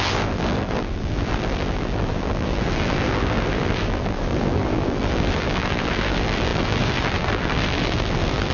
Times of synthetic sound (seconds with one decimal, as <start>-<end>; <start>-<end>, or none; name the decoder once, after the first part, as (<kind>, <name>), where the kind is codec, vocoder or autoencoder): 0.0-8.5 (vocoder, BigVGAN v2)